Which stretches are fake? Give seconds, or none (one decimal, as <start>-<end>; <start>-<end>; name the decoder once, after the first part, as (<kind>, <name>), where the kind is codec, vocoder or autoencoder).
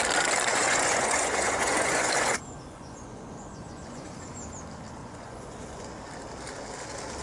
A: 0.5-4.6 (vocoder, Vocos); 5.0-5.9